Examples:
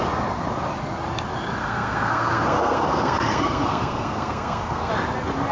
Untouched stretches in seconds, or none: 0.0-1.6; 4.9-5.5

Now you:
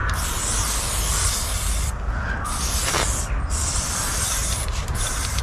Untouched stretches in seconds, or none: 0.0-4.4

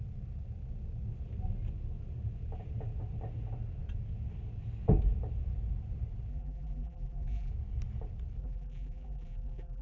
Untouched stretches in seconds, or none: 0.0-6.3; 7.5-8.4